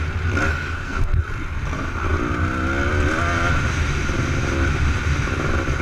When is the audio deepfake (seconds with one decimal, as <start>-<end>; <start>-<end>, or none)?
0.5-1.2